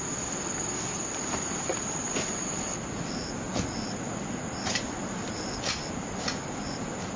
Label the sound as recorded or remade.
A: recorded